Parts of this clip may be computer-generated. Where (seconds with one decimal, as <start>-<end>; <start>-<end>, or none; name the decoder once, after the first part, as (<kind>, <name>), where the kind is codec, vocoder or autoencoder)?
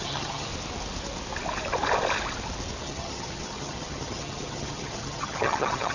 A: 0.0-0.5 (vocoder, HiFi-GAN); 2.8-5.9